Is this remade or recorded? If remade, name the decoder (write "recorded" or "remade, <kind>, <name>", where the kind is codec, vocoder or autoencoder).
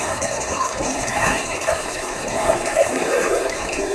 remade, codec, SNAC